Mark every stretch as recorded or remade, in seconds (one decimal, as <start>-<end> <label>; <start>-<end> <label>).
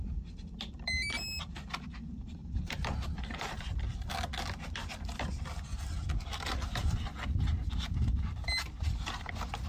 0.0-2.4 recorded; 2.4-3.8 remade; 3.8-9.7 recorded